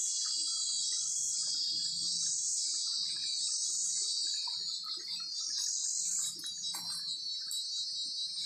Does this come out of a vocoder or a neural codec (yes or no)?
yes